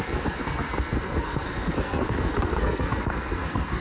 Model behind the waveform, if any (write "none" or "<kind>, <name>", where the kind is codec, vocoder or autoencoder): codec, SNAC